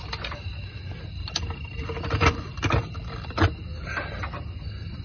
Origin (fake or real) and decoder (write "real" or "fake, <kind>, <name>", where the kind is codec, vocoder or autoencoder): real